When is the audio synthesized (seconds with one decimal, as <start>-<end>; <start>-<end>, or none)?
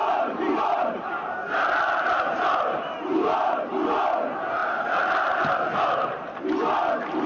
0.0-0.6; 3.1-3.7